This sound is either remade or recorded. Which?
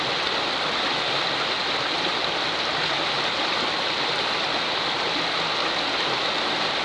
recorded